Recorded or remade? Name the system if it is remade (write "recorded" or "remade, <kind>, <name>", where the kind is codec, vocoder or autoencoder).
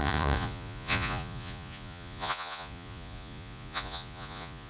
remade, vocoder, Vocos